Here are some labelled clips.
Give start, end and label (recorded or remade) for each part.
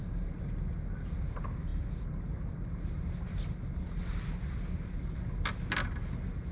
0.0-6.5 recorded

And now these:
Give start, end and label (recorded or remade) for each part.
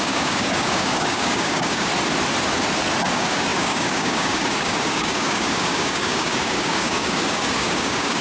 0.0-1.9 remade; 1.9-3.1 recorded; 3.1-8.2 remade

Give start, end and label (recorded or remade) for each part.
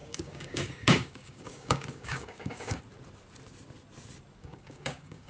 0.0-2.8 remade; 2.8-4.4 recorded; 4.4-5.3 remade